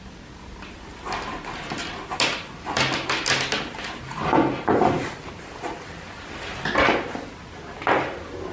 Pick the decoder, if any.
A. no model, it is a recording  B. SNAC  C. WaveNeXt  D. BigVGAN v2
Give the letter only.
A